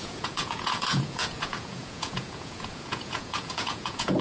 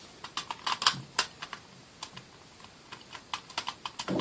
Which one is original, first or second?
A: second